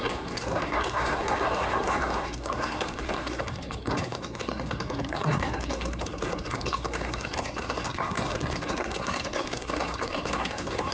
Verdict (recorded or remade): remade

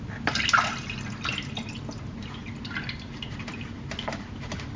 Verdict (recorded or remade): recorded